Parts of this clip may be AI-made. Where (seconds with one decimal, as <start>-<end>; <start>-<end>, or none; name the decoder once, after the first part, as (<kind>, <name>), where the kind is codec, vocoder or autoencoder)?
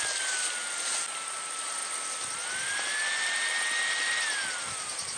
none